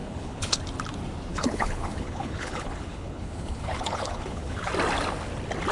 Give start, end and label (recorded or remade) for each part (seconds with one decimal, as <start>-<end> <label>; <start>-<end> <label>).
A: 0.0-0.6 remade; 0.6-1.3 recorded; 1.3-4.7 remade; 4.7-5.7 recorded